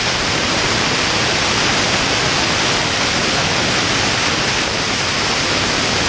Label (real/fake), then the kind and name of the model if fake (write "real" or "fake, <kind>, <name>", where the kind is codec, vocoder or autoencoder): real